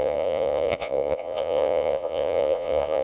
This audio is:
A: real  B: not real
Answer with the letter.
B